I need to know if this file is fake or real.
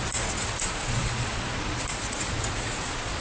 fake